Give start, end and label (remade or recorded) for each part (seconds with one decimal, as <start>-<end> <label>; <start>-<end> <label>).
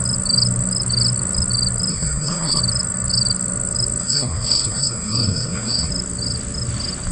0.0-1.9 recorded; 1.9-2.6 remade; 2.6-4.0 recorded; 4.0-5.9 remade; 5.9-7.1 recorded